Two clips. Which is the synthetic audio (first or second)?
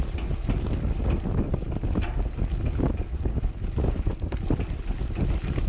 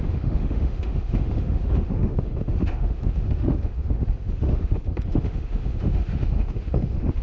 second